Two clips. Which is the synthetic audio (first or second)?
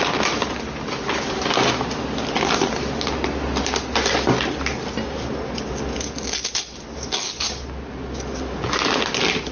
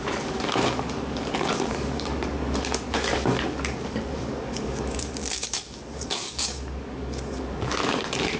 second